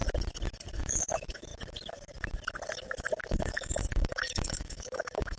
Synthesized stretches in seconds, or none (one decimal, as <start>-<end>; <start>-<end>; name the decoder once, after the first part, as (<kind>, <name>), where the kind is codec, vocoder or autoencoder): 0.7-1.5 (autoencoder, DAC-VAE); 3.3-5.4